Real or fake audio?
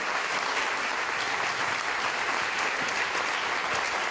real